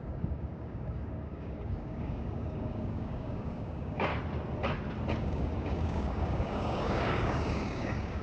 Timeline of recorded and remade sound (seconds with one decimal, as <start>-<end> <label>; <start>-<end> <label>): 0.0-4.1 remade; 4.1-5.2 recorded; 5.2-8.2 remade